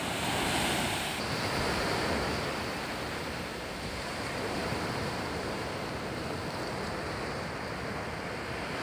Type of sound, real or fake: fake